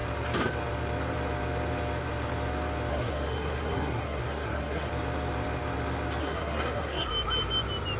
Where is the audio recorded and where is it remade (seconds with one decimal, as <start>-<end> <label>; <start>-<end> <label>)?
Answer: 0.0-2.9 recorded; 2.9-4.9 remade; 4.9-6.2 recorded; 6.2-7.1 remade; 7.1-8.0 recorded